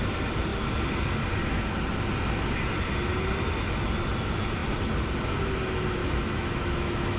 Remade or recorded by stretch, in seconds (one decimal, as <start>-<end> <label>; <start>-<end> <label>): 0.0-6.0 recorded; 6.0-7.2 remade